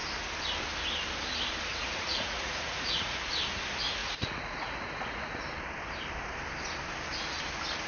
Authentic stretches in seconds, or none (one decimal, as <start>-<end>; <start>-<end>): 0.0-1.7; 3.3-4.0; 5.4-7.9